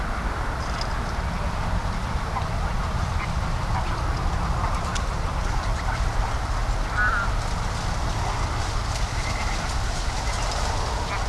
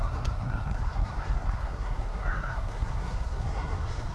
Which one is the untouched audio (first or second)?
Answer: first